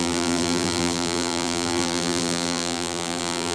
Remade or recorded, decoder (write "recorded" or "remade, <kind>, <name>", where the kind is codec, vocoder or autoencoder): remade, vocoder, BigVGAN v2